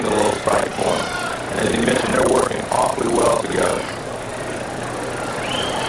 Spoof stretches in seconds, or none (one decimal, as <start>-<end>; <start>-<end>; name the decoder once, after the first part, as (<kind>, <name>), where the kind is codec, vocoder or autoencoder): 0.0-4.3 (vocoder, BigVGAN v2); 5.3-5.9